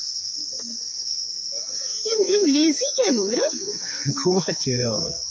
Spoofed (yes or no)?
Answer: yes